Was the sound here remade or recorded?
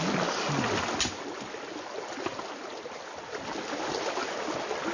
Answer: recorded